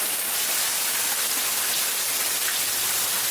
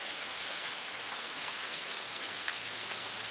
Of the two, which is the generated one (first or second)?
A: second